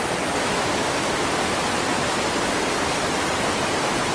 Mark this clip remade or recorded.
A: recorded